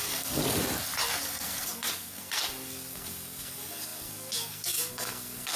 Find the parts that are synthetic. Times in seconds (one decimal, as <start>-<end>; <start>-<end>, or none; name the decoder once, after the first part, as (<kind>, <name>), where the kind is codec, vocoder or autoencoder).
0.0-0.4 (codec, SNAC); 1.2-5.6